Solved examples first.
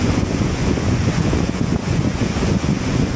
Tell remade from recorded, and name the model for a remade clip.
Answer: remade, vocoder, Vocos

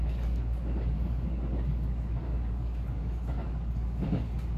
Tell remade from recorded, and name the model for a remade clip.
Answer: remade, codec, DAC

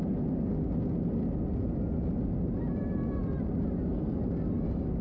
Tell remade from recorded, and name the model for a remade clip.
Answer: recorded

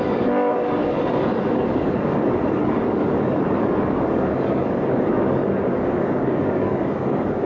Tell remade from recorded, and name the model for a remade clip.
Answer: remade, codec, DAC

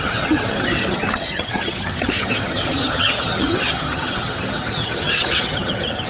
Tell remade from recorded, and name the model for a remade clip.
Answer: remade, vocoder, HiFi-GAN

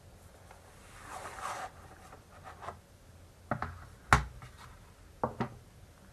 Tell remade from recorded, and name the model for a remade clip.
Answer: recorded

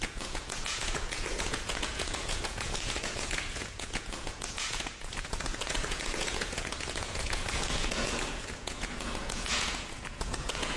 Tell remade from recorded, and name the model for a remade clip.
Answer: remade, vocoder, Vocos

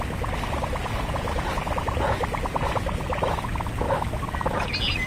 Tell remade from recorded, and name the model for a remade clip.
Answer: recorded